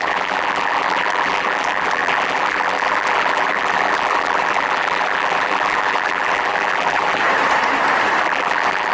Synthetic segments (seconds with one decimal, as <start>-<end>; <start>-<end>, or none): 0.0-7.2; 8.2-8.9